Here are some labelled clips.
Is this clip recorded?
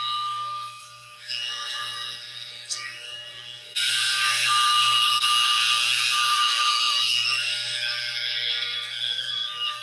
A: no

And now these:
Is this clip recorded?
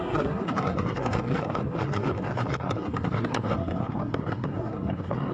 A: no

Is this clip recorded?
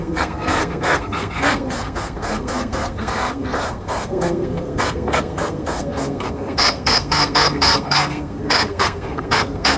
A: no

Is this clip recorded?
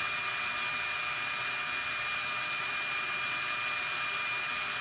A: yes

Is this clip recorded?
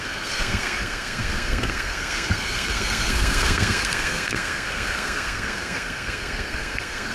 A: no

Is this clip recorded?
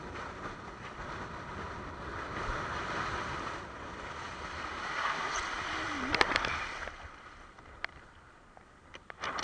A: yes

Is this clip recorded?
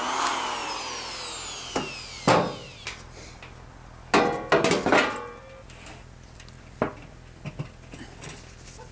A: yes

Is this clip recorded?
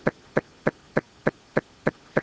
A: yes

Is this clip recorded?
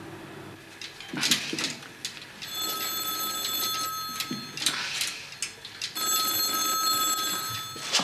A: yes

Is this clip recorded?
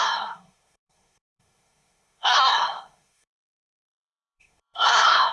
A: no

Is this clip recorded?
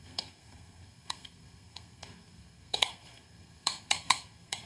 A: no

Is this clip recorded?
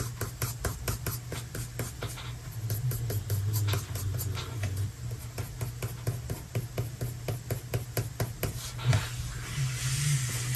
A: yes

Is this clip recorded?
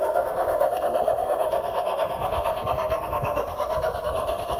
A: no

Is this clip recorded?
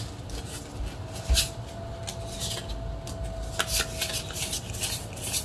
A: yes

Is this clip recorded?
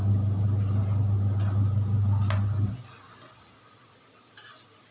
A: yes